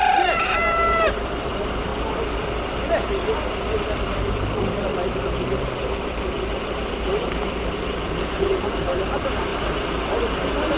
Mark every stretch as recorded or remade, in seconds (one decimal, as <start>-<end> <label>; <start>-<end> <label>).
0.0-1.9 remade; 1.9-4.3 recorded; 4.3-4.9 remade; 4.9-7.6 recorded; 7.6-9.5 remade; 9.5-10.8 recorded